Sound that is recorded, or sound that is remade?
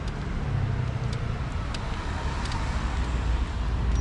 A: recorded